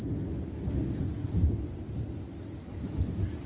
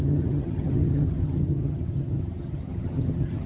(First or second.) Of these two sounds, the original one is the first